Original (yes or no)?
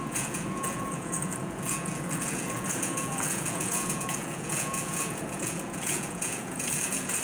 no